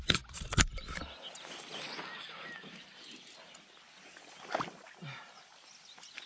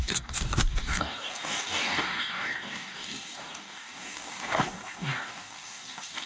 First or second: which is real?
first